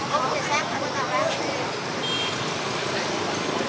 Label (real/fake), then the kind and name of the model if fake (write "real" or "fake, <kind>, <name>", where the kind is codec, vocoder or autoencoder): fake, vocoder, BigVGAN v2